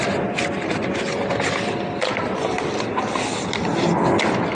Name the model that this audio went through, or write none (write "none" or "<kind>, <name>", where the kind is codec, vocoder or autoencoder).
none